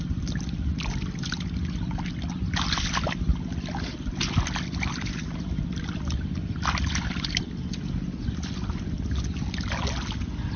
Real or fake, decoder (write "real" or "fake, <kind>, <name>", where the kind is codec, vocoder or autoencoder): real